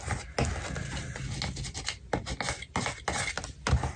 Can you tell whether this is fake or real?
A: real